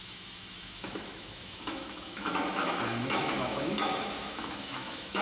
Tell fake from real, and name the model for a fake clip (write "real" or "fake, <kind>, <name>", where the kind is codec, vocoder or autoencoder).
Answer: fake, autoencoder, DAC-VAE